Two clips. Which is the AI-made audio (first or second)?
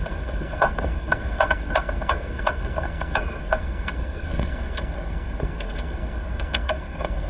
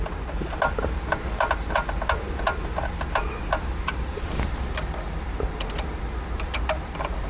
first